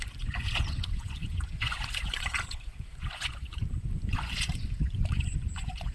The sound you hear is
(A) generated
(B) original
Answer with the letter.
A